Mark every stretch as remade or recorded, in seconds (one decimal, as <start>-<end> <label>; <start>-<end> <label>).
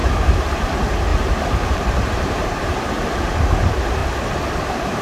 0.0-0.7 remade; 0.7-1.1 recorded; 1.1-3.4 remade; 3.4-4.0 recorded; 4.0-5.0 remade